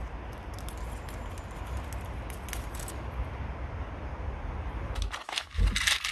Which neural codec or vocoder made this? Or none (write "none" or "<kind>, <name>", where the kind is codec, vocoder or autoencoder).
none